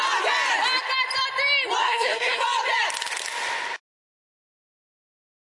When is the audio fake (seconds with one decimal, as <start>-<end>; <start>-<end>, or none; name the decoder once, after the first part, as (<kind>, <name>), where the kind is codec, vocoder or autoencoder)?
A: 1.8-2.4 (codec, SNAC)